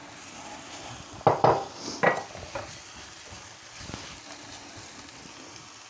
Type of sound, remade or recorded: recorded